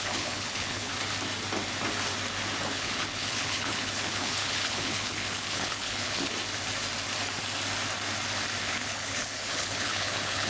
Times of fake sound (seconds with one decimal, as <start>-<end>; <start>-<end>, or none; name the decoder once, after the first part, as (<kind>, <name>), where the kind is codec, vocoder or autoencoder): 0.0-0.9 (codec, HILCodec); 2.7-6.3; 8.6-10.5